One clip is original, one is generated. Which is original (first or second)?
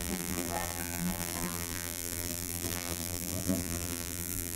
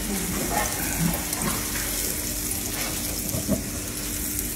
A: second